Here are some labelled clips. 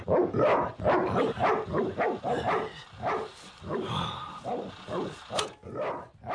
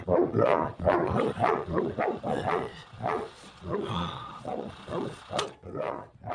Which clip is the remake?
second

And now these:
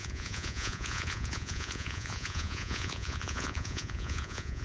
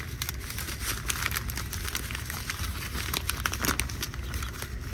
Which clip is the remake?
first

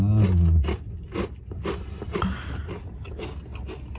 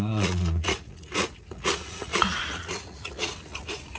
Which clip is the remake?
second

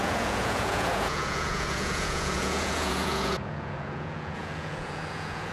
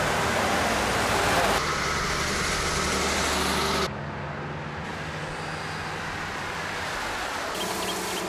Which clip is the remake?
first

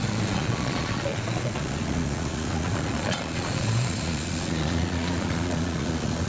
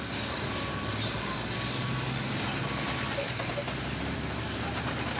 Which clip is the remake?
first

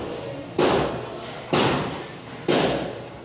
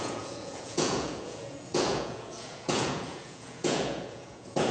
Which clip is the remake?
second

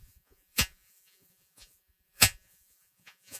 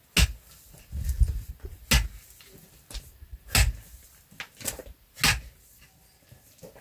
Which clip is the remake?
first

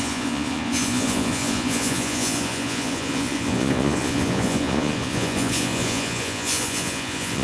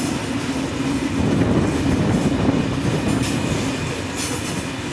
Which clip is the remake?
first